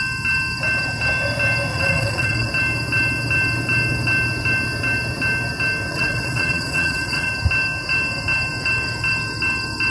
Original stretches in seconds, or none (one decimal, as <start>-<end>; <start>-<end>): 0.0-1.7; 2.5-5.9; 7.3-9.9